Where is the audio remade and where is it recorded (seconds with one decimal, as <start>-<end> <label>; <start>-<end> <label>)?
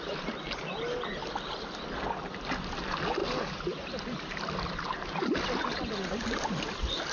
0.0-7.1 recorded